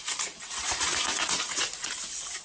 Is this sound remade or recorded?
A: remade